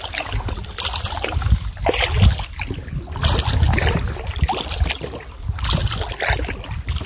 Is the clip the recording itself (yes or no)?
yes